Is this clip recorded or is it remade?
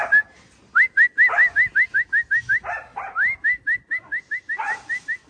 recorded